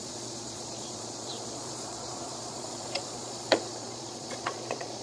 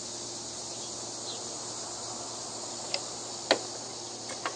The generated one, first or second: first